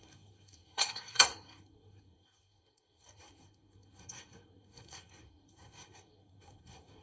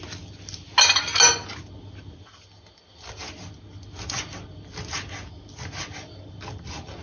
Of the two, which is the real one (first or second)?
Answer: second